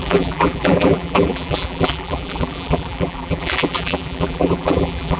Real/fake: fake